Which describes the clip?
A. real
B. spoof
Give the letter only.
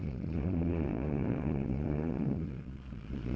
B